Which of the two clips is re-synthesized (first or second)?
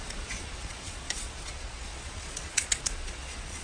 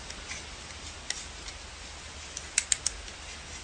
first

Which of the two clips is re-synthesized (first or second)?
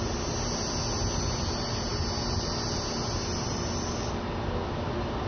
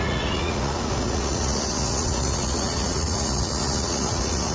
second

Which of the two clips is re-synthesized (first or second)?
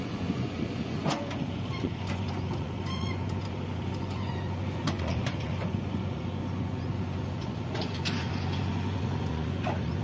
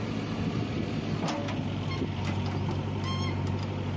first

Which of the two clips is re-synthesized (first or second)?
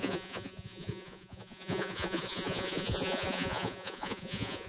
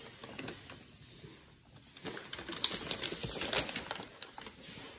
first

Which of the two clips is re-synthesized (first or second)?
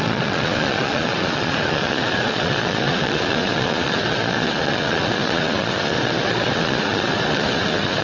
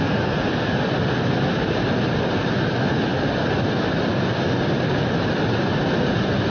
first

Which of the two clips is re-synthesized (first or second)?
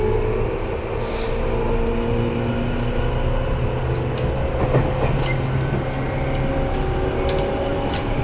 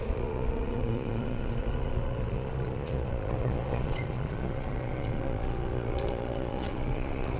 second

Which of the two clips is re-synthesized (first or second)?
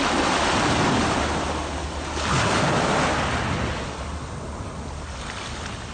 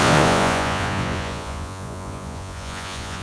second